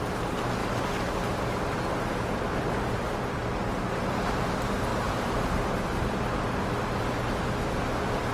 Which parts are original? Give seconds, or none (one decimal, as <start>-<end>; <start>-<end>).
0.0-4.9; 6.2-8.3

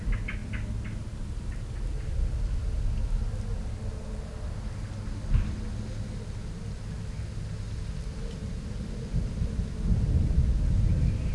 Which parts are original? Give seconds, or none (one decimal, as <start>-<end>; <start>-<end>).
0.0-11.3

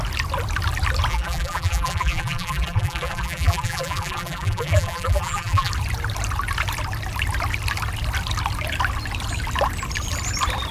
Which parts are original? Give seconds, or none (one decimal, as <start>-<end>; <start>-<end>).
0.0-1.1; 5.7-10.7

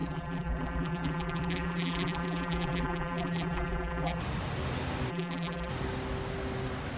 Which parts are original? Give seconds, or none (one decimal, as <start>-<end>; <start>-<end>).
4.2-5.1; 5.7-7.0

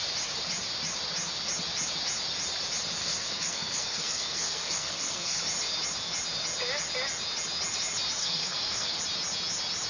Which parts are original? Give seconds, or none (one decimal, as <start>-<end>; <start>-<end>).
0.0-3.0; 5.4-8.2; 9.0-9.9

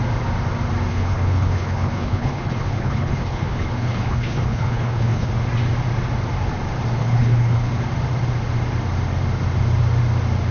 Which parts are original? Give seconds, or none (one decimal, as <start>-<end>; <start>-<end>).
0.0-0.9; 5.3-7.0; 7.7-10.5

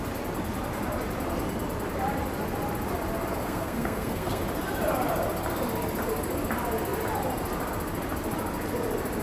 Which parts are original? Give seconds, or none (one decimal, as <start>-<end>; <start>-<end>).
0.0-3.4; 4.4-9.2